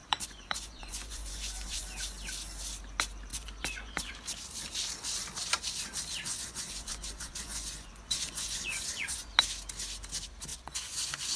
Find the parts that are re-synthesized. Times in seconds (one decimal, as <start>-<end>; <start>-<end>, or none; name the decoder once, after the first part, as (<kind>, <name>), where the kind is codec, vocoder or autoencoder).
0.0-1.8 (vocoder, Vocos); 3.3-4.1; 6.3-9.3; 10.5-11.4